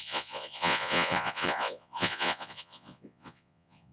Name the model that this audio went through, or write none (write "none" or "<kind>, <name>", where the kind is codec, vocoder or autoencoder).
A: vocoder, Vocos